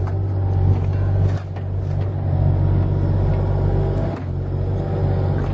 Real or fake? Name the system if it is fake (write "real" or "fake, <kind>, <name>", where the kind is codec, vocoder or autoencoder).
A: real